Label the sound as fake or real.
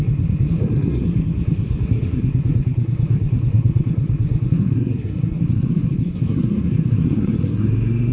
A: fake